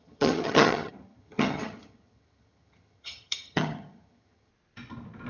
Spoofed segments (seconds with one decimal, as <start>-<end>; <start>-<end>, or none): 0.0-4.5